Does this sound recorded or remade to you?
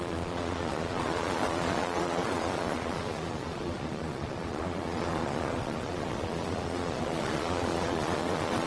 remade